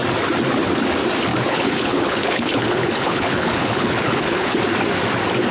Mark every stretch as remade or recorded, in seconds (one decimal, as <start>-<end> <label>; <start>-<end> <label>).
0.0-1.3 recorded; 1.3-4.6 remade; 4.6-5.5 recorded